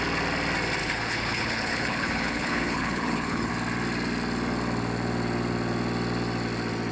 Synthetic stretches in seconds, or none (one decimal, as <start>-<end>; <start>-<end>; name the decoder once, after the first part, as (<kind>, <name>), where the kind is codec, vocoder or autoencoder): 0.8-3.5 (codec, HILCodec)